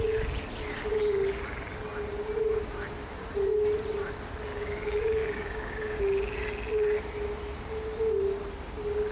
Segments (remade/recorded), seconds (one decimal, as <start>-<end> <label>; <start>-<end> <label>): 0.0-4.5 recorded; 4.5-6.0 remade; 6.0-9.1 recorded

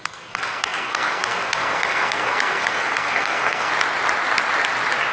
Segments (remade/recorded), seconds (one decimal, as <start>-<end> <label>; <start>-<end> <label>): 0.0-3.7 remade; 3.7-5.1 recorded

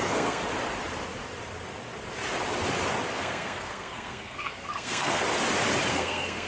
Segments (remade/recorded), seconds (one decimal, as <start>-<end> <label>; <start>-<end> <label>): 0.0-0.4 remade; 0.4-3.1 recorded; 3.1-5.2 remade; 5.2-5.9 recorded; 5.9-6.5 remade

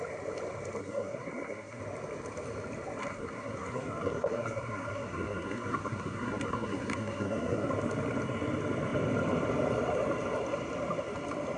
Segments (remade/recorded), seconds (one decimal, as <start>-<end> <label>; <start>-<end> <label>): 0.0-0.8 recorded; 0.8-1.8 remade; 1.8-3.0 recorded; 3.0-7.7 remade; 7.7-11.6 recorded

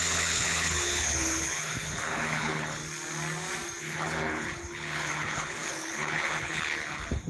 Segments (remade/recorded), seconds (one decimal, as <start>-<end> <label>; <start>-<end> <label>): 0.0-2.8 remade; 2.8-3.8 recorded; 3.8-7.3 remade

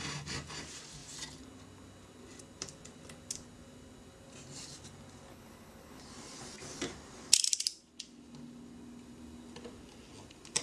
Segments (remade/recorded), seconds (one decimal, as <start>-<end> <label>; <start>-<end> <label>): 0.0-5.3 recorded; 5.3-6.0 remade; 6.0-10.6 recorded

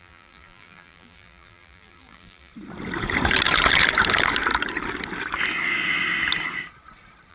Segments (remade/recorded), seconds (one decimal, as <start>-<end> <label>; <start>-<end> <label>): 0.0-2.5 remade; 2.5-7.3 recorded

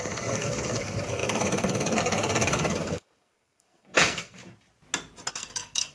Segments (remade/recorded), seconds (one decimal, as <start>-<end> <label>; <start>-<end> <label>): 0.0-4.4 remade; 4.4-5.3 recorded; 5.3-5.9 remade